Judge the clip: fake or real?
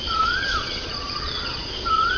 fake